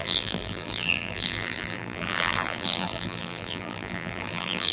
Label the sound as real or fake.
fake